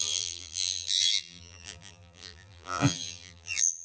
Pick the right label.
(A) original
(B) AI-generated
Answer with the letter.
B